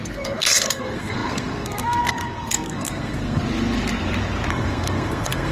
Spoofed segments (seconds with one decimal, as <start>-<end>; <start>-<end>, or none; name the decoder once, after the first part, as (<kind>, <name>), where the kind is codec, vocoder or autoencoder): 0.0-3.4 (codec, SNAC); 4.5-5.5